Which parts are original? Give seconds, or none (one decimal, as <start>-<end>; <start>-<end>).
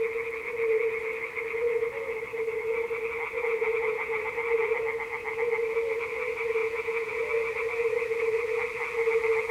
0.0-3.6; 4.3-6.6; 7.2-9.5